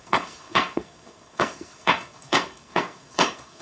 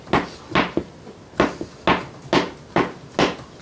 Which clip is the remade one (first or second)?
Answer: first